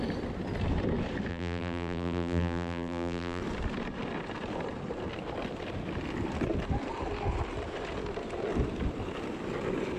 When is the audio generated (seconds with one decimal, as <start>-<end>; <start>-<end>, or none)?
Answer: 1.3-3.4

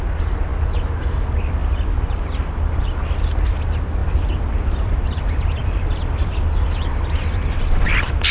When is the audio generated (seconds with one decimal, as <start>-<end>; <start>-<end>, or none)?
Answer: 1.6-3.0; 4.0-8.3